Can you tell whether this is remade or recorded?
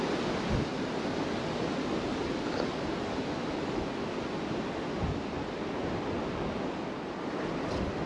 recorded